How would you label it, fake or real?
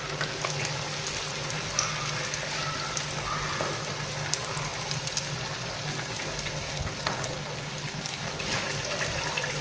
real